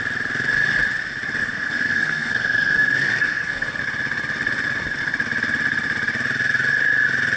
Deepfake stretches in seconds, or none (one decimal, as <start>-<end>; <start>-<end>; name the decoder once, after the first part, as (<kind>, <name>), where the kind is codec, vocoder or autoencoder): 1.4-3.8 (codec, SNAC)